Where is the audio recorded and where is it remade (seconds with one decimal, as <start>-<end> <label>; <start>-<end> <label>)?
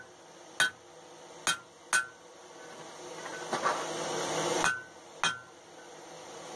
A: 0.0-6.6 recorded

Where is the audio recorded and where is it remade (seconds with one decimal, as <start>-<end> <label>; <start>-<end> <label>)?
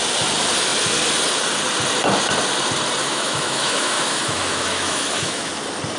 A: 0.0-3.0 recorded; 3.0-5.5 remade; 5.5-6.0 recorded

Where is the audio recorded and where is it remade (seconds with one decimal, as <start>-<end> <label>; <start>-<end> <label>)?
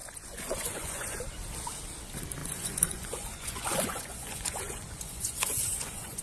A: 0.0-1.2 remade; 1.2-2.4 recorded; 2.4-6.2 remade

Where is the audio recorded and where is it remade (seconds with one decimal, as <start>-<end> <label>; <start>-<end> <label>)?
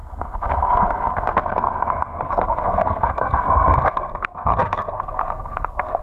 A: 0.0-6.0 remade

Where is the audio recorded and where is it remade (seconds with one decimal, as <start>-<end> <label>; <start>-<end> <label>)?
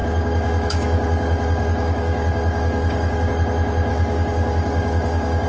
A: 0.0-3.3 remade; 3.3-3.9 recorded; 3.9-5.5 remade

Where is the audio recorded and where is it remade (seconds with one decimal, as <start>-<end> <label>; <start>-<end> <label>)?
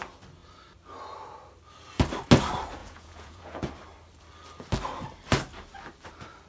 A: 0.0-2.8 recorded; 2.8-3.7 remade; 3.7-6.5 recorded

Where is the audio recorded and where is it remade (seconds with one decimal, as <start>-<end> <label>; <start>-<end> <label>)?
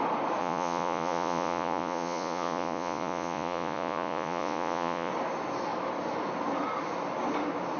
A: 0.0-0.4 recorded; 0.4-5.1 remade; 5.1-7.8 recorded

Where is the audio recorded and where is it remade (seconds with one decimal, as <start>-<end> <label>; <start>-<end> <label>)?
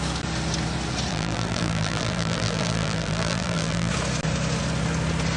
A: 0.0-1.1 recorded; 1.1-3.9 remade; 3.9-5.4 recorded